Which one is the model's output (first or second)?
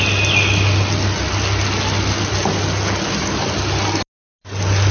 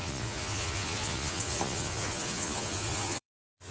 second